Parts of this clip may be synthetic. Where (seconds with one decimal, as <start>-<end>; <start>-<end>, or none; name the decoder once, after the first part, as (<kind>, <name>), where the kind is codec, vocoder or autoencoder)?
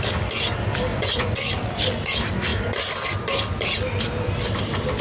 0.9-1.5 (vocoder, Vocos)